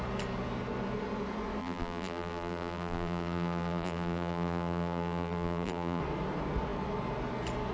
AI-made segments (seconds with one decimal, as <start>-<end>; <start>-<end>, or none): 1.6-6.0